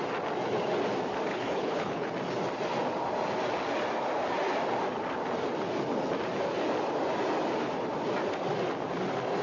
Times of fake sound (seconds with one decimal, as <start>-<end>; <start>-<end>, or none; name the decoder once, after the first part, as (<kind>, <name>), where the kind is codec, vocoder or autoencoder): 1.3-2.1 (codec, HILCodec)